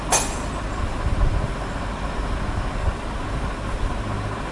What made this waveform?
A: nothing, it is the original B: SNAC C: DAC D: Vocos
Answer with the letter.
A